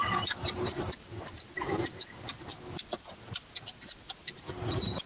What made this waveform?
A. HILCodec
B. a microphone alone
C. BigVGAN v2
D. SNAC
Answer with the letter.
B